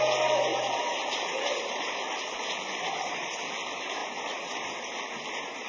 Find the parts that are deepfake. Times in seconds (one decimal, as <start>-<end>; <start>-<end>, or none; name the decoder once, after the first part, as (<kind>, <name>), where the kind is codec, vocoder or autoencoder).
0.5-3.4 (vocoder, BigVGAN v2); 4.0-4.8